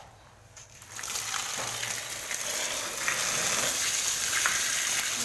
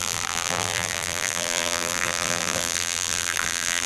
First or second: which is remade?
second